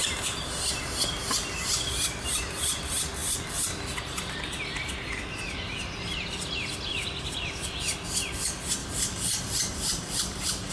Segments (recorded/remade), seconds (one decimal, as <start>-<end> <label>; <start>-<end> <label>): 0.0-8.8 recorded; 8.8-10.7 remade